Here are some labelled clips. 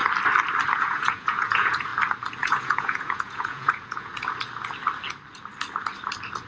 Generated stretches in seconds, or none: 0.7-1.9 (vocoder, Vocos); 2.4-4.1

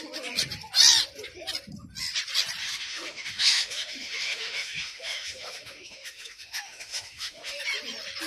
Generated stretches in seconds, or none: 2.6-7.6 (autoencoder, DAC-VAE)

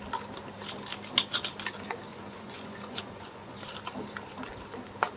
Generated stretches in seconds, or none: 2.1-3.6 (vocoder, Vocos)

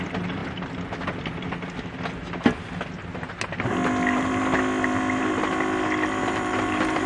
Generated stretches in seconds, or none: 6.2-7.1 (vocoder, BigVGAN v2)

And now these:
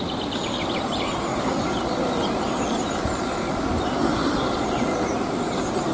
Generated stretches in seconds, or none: 1.3-2.9 (vocoder, BigVGAN v2)

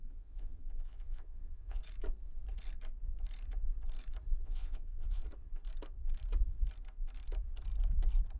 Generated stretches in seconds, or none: 0.0-1.8 (vocoder, Vocos); 4.4-5.2

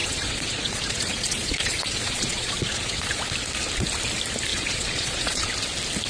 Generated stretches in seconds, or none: 0.0-3.2 (vocoder, Vocos); 4.5-5.5

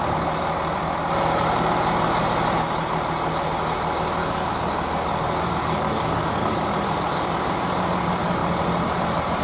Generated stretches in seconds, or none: 4.2-6.7 (codec, DAC)